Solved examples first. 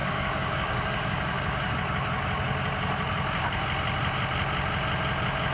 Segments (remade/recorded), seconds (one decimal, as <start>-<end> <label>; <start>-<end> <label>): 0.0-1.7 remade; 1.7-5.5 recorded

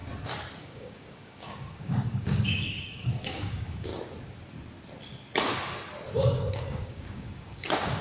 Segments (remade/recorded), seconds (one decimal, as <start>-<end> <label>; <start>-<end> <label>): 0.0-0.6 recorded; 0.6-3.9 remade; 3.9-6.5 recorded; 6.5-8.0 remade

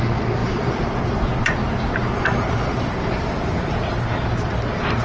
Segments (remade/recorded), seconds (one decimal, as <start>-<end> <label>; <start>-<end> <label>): 0.0-0.4 recorded; 0.4-3.4 remade; 3.4-5.0 recorded